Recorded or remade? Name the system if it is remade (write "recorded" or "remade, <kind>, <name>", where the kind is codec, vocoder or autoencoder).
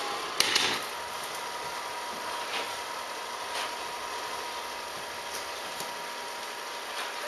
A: recorded